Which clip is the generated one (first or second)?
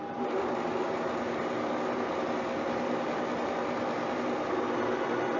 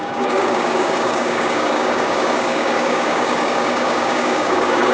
second